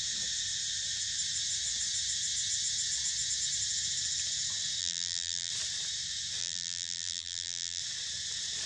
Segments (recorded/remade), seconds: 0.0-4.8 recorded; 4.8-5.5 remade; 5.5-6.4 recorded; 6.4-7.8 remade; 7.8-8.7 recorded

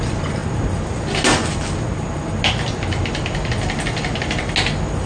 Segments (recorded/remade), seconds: 0.0-5.1 recorded

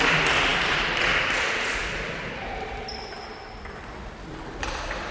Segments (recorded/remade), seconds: 0.0-0.5 recorded; 0.5-1.7 remade; 1.7-5.1 recorded

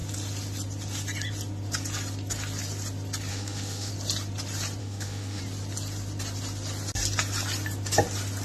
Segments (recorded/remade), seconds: 0.0-3.3 recorded; 3.3-3.9 remade; 3.9-4.8 recorded; 4.8-5.4 remade; 5.4-8.4 recorded

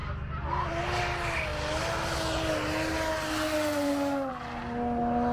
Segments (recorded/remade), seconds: 0.0-5.3 recorded

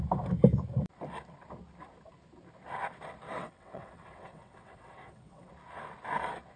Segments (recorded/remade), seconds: 0.0-3.4 recorded; 3.4-5.5 remade; 5.5-6.6 recorded

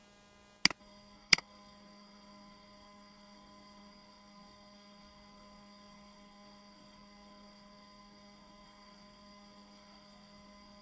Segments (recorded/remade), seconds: 0.0-0.8 recorded; 0.8-10.8 remade